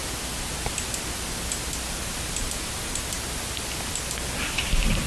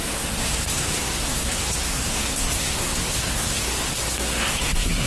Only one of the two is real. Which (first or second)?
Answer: first